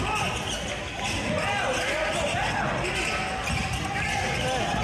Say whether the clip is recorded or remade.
recorded